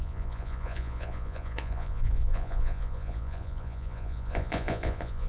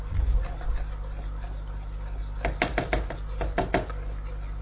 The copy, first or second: first